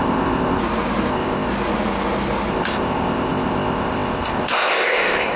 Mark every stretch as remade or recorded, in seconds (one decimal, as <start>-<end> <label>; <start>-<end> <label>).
0.0-0.6 remade; 0.6-1.1 recorded; 1.1-1.5 remade; 1.5-2.5 recorded; 2.5-5.4 remade